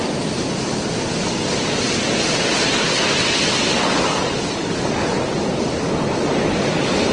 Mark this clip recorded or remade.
recorded